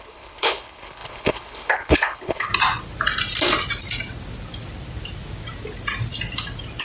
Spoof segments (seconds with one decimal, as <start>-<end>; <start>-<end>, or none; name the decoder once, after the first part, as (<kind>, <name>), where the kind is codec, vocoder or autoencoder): 0.0-2.5 (codec, HILCodec)